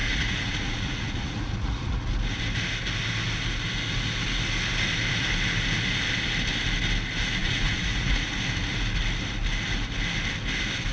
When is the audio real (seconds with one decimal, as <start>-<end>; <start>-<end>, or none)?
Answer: 2.1-7.4; 8.3-10.9